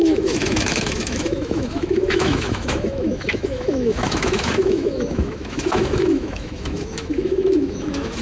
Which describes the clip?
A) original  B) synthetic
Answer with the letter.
B